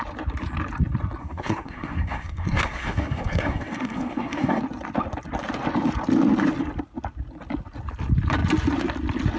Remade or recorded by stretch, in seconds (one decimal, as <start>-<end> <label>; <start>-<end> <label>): 0.0-1.2 recorded; 1.2-4.6 remade; 4.6-9.4 recorded